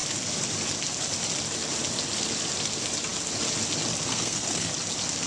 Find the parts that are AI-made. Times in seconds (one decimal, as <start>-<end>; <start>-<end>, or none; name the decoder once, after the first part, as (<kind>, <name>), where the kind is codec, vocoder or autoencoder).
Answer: 4.1-4.7 (codec, SNAC)